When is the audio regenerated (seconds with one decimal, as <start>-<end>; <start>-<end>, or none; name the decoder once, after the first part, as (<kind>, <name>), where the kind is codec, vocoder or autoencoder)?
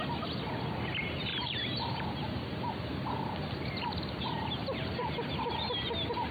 1.3-5.1 (vocoder, BigVGAN v2)